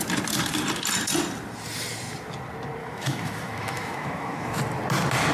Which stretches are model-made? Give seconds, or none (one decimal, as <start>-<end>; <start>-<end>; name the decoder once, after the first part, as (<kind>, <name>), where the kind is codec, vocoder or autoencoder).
2.8-4.6 (autoencoder, DAC-VAE)